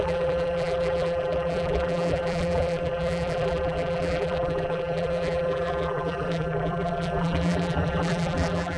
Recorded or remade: remade